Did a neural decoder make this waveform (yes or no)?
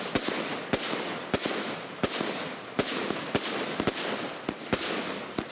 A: yes